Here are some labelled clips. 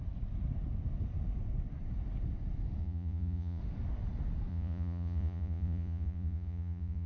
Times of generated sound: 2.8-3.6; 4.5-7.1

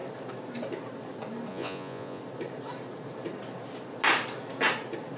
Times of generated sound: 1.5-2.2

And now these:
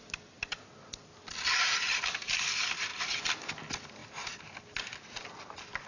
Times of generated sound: none